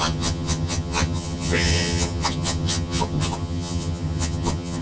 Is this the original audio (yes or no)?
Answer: no